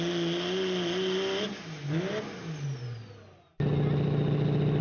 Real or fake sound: real